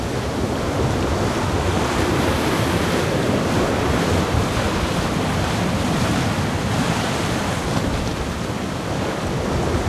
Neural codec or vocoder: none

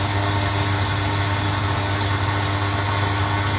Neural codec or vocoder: none